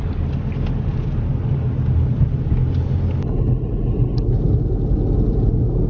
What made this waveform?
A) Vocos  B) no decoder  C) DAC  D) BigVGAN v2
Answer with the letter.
B